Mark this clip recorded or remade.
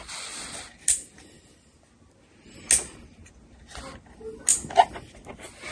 recorded